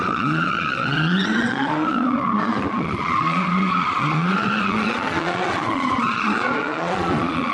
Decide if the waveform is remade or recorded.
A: remade